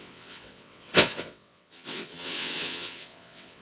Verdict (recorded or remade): remade